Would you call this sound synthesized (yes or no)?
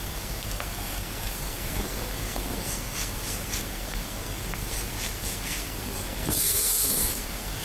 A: yes